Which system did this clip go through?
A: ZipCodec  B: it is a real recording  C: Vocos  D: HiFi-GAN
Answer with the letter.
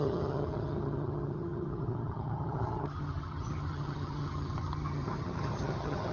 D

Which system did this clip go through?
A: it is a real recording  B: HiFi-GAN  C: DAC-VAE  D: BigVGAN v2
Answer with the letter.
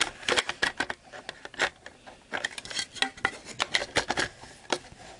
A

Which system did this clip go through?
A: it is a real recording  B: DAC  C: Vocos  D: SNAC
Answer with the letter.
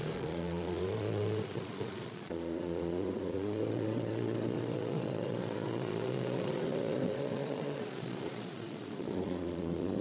C